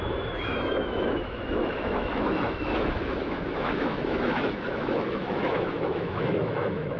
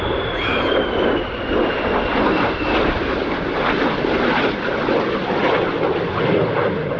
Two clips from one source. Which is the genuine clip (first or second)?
second